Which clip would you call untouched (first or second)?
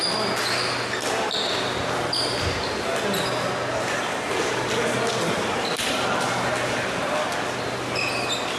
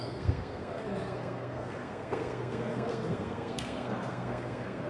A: first